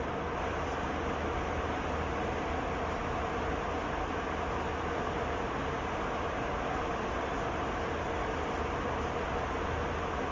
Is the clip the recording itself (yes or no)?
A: yes